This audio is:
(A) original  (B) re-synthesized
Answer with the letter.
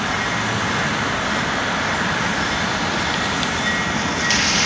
A